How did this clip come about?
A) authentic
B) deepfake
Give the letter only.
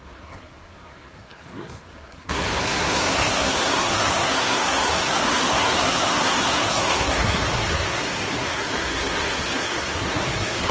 B